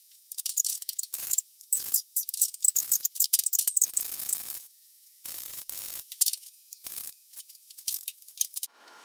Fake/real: fake